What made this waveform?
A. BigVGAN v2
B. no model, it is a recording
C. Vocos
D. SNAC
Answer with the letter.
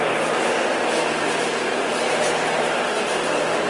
B